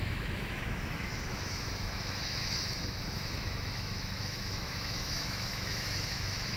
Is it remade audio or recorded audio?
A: remade